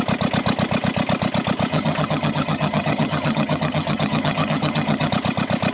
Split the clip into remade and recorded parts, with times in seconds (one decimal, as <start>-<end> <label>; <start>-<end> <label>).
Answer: 0.0-1.7 recorded; 1.7-5.1 remade; 5.1-5.7 recorded